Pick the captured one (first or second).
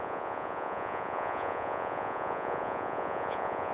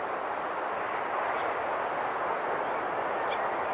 second